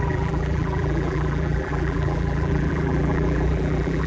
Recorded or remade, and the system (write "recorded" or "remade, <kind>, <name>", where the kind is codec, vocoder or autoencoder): remade, vocoder, BigVGAN v2